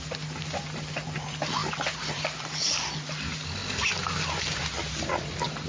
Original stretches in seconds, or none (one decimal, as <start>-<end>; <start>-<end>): 0.0-5.7